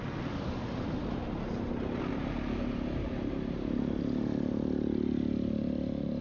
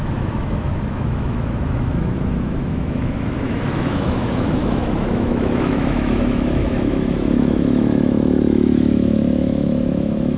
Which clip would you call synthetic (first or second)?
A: second